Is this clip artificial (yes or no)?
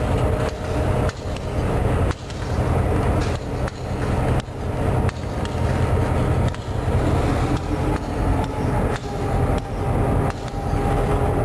no